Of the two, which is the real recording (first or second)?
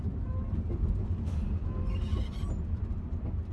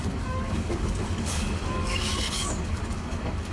first